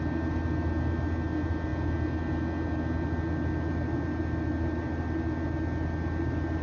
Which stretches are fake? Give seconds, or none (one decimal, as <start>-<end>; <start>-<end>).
none